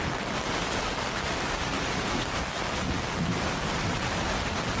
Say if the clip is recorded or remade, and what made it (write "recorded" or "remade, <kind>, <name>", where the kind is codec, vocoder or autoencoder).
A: recorded